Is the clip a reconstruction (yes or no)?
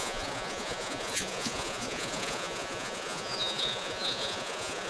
yes